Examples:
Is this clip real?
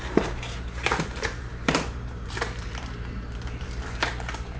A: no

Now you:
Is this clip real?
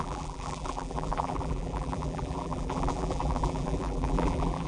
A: no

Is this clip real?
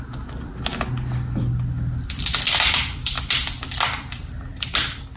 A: yes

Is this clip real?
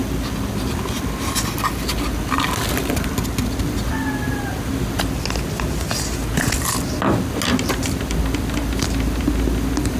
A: yes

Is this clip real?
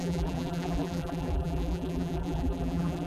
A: no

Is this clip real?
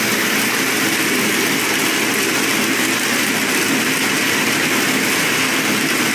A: yes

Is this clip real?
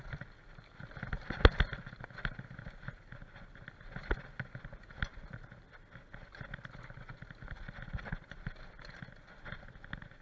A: yes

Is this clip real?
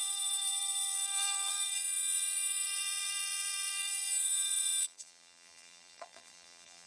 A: no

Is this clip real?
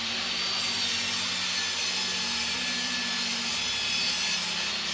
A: no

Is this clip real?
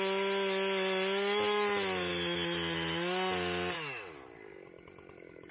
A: yes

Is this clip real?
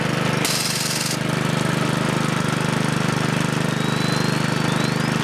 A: yes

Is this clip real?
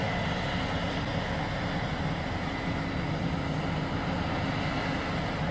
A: yes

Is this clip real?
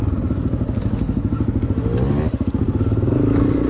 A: yes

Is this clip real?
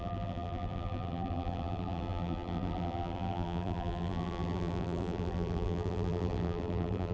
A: no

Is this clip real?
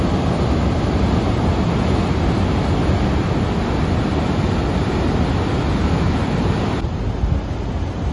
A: yes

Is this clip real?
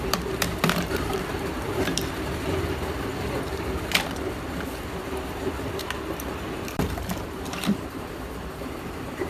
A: no